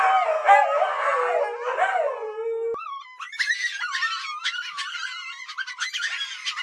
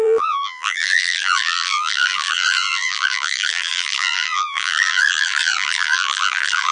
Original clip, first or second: first